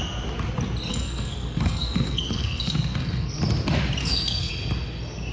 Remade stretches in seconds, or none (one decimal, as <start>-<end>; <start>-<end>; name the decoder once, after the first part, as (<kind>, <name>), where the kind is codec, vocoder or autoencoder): 0.9-3.4 (codec, SNAC); 4.0-4.5